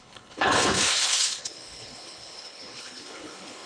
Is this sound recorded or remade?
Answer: remade